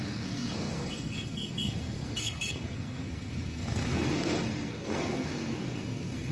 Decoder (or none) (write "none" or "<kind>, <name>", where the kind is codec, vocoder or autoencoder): codec, SNAC